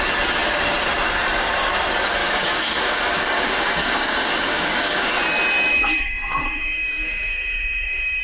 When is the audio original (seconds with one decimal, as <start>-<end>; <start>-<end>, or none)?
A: 0.0-2.2; 5.1-5.7